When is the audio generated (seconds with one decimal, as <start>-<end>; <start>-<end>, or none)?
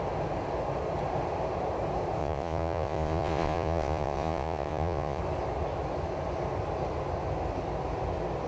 2.2-5.2